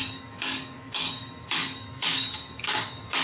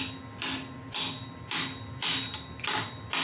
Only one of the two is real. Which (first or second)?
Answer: second